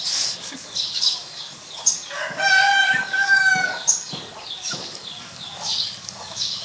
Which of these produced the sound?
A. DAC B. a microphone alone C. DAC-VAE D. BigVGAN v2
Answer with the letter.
A